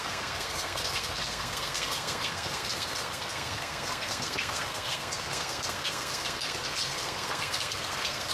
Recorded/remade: remade